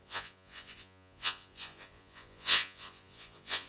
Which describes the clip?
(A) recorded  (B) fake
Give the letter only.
B